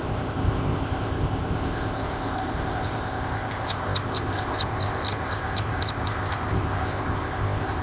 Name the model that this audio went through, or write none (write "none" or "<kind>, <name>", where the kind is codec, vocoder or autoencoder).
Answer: codec, ZipCodec